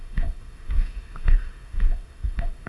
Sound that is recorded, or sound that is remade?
remade